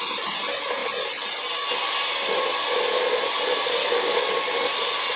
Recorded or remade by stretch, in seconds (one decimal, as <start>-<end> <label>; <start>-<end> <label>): 0.0-3.8 recorded; 3.8-4.3 remade; 4.3-5.2 recorded